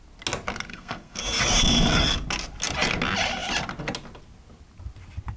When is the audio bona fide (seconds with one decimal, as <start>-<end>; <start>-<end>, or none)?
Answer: 0.0-0.7; 1.2-5.4